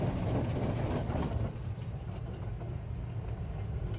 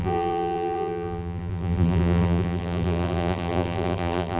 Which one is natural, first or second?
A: first